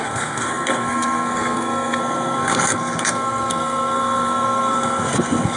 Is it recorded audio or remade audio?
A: remade